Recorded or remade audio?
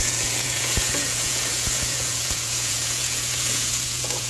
remade